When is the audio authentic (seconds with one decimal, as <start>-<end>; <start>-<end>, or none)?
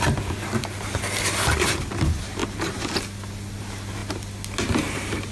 0.0-5.3